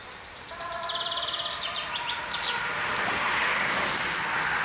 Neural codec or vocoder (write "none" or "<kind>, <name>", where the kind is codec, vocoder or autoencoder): none